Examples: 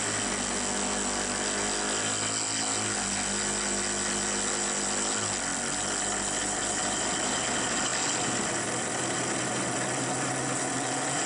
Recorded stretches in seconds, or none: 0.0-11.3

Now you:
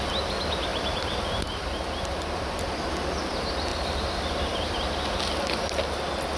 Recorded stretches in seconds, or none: 0.0-0.7; 2.6-3.7; 5.1-6.4

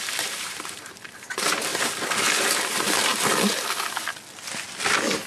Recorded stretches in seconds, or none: 1.7-2.4; 3.1-5.3

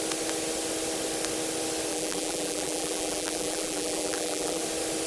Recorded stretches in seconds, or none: 0.0-1.9; 4.6-5.1